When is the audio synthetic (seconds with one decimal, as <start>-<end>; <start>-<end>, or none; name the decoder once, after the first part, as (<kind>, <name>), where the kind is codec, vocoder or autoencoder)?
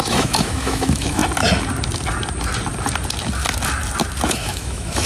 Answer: 0.0-1.2 (autoencoder, DAC-VAE); 4.3-5.1